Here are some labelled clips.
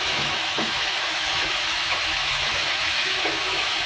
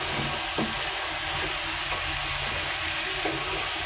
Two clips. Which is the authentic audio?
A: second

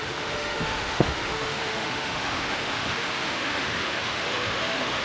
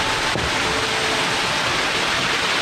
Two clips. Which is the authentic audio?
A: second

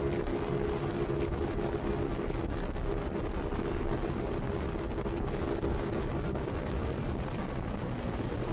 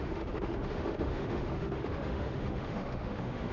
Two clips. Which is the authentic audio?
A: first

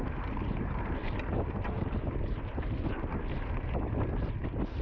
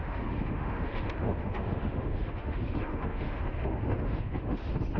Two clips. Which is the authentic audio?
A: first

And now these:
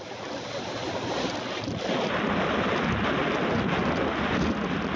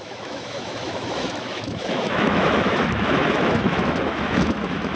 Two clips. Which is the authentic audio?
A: first